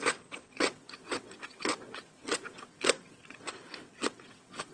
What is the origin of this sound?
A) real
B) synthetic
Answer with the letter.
B